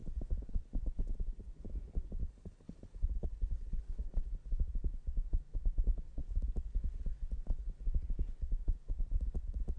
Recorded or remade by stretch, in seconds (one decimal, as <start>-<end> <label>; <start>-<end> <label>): 0.0-2.2 recorded; 2.2-4.3 remade; 4.3-9.8 recorded